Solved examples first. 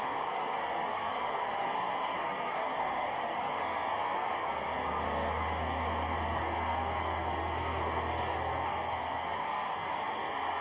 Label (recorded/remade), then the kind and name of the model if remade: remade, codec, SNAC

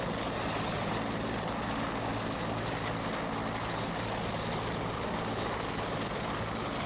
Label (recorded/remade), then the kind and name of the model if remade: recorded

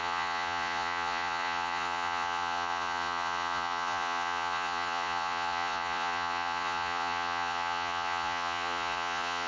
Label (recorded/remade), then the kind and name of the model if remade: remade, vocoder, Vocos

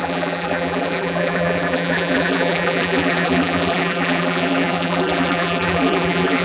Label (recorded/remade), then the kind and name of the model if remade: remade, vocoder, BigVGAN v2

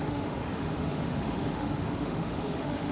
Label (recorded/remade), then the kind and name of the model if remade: remade, autoencoder, DAC-VAE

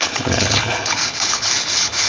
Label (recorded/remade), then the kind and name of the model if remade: remade, codec, HILCodec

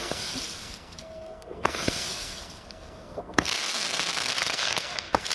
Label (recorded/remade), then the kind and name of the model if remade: remade, codec, SNAC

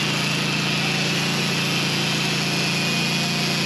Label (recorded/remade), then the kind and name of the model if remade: recorded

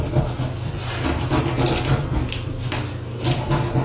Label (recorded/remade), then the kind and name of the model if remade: recorded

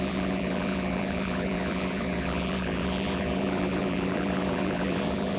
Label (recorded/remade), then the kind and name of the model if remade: remade, vocoder, BigVGAN v2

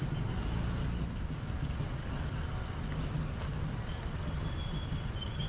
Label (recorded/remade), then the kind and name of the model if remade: recorded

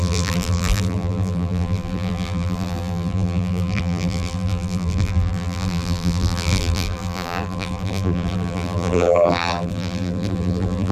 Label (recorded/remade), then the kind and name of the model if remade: remade, vocoder, BigVGAN v2